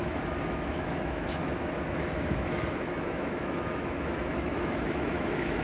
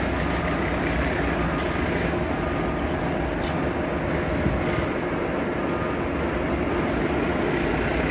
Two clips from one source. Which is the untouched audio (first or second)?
second